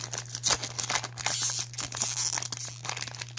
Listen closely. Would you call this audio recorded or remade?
recorded